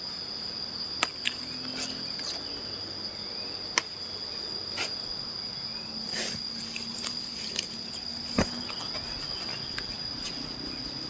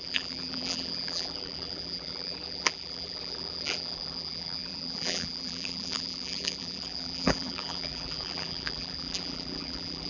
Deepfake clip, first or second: second